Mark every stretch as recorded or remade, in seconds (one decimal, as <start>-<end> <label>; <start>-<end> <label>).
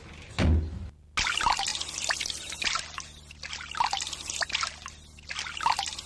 0.0-6.1 recorded